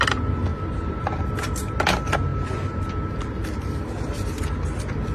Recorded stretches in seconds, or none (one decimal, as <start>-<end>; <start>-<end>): 0.0-0.5; 1.2-5.1